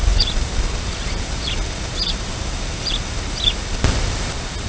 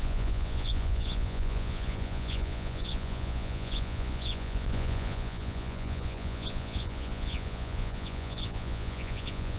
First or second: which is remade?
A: second